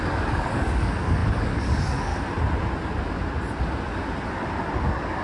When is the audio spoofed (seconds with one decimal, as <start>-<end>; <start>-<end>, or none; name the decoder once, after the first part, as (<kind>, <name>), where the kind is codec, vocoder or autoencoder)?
0.0-2.1 (codec, DAC); 4.8-5.2